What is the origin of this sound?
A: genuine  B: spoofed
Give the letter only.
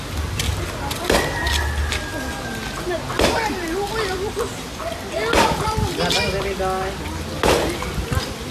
A